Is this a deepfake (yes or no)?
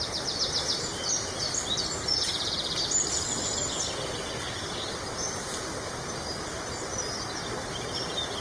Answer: no